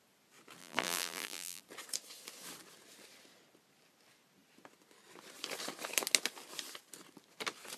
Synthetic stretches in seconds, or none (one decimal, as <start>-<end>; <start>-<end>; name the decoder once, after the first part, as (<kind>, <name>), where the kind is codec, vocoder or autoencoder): 0.6-1.6 (vocoder, BigVGAN v2)